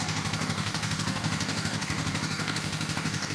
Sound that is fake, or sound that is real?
fake